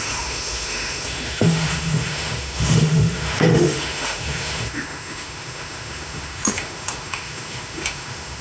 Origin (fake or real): fake